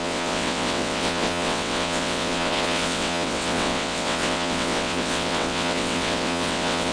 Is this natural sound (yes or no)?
no